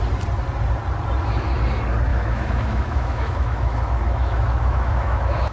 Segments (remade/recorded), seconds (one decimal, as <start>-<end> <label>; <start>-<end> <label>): 0.0-2.1 recorded; 2.1-5.5 remade